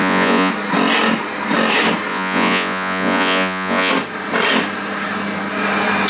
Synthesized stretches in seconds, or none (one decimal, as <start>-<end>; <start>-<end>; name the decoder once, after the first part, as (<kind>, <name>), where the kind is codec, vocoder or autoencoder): 0.0-0.5 (vocoder, Vocos); 2.1-3.9